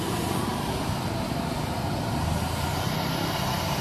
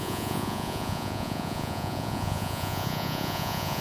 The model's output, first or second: second